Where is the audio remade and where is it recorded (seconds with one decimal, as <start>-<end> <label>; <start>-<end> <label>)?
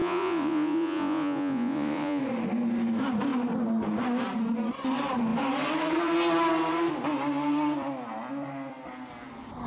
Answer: 0.0-2.2 remade; 2.2-9.7 recorded